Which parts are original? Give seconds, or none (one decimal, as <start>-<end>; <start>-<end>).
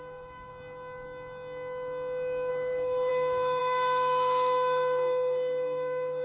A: 0.5-2.5